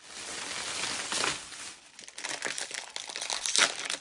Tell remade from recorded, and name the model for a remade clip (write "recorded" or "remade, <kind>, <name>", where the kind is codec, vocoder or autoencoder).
recorded